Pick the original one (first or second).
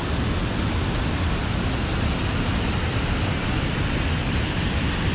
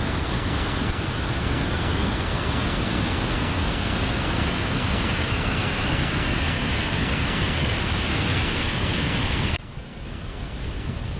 first